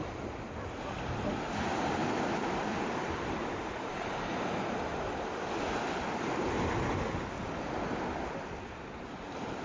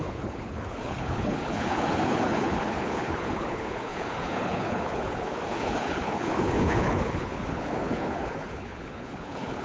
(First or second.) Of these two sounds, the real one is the first